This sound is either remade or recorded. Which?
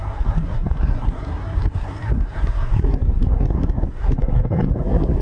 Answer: remade